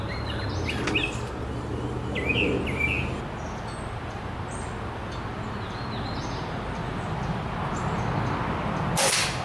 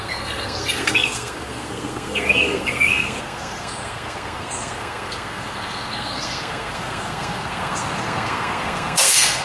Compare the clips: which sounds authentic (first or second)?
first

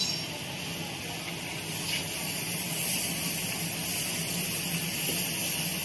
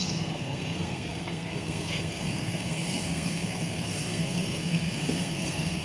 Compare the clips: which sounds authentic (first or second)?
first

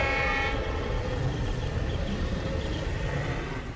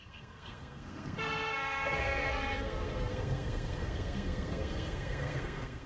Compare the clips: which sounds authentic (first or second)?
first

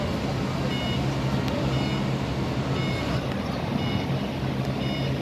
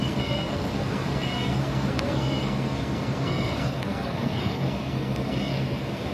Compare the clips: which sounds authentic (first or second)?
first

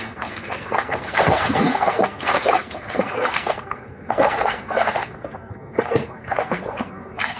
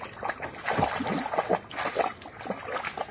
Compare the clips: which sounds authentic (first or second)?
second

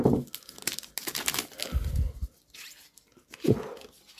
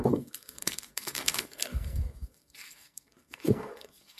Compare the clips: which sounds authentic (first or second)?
first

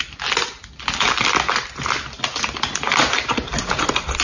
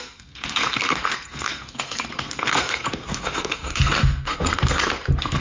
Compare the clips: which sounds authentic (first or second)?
first